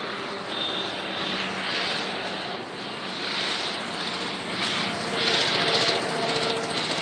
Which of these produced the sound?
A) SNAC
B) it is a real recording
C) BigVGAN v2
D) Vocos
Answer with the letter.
B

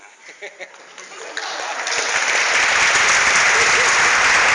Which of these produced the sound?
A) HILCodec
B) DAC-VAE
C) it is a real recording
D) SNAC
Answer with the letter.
C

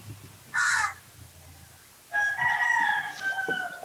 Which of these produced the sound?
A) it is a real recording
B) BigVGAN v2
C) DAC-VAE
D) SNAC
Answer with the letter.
A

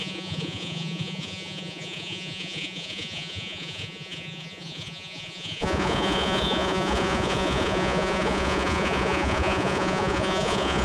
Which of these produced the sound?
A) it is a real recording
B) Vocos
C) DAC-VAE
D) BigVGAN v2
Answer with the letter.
B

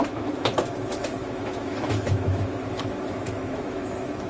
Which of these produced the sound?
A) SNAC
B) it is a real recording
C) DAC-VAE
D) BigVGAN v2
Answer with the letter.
C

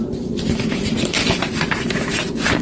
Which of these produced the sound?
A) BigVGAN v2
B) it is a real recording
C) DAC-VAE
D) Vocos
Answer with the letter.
A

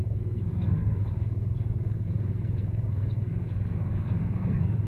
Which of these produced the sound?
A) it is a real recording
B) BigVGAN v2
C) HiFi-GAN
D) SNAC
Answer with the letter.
D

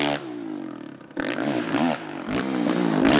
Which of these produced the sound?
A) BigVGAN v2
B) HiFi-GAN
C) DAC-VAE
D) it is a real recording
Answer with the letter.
D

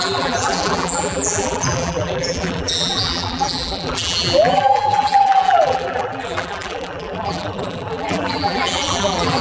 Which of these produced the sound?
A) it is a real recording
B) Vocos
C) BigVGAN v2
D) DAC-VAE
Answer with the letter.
C